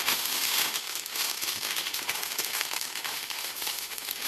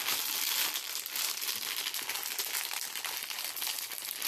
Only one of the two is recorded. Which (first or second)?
second